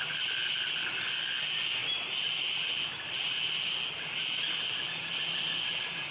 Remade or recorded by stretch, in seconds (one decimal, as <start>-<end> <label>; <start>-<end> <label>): 0.0-6.1 recorded